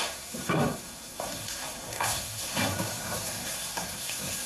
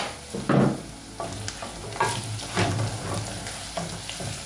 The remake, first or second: first